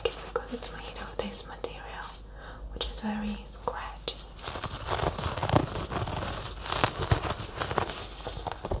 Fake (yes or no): no